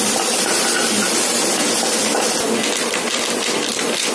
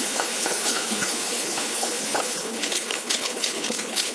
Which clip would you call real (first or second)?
first